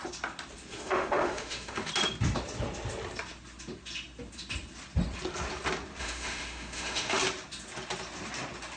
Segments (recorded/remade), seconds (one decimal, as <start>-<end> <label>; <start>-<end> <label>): 0.0-0.7 recorded; 0.7-1.9 remade; 1.9-6.0 recorded; 6.0-7.2 remade; 7.2-8.8 recorded